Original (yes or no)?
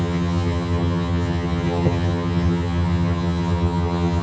no